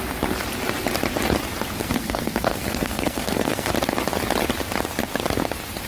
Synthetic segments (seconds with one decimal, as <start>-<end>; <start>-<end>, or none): 1.8-3.7

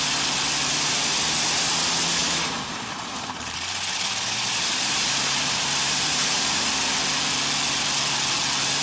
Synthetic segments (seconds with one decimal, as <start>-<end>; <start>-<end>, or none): 2.2-6.7

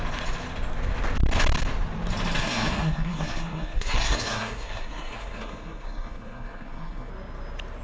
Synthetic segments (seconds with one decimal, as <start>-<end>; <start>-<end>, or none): 2.4-7.1